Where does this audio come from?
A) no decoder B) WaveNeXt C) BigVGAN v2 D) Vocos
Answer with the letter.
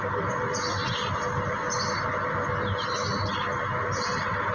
A